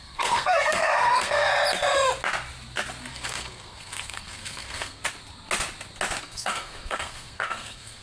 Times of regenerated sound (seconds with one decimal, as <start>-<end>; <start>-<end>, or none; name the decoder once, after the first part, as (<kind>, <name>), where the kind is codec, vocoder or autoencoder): 0.0-1.5 (codec, SNAC); 3.1-5.0; 6.2-8.0